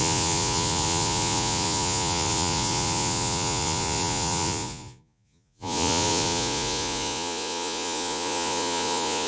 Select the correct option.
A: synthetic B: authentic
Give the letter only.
A